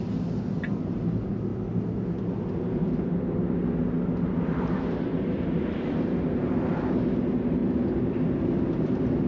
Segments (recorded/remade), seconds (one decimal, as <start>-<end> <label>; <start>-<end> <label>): 0.0-9.3 recorded